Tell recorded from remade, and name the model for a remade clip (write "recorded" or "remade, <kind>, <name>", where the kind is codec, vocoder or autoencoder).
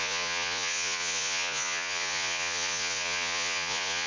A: remade, vocoder, Vocos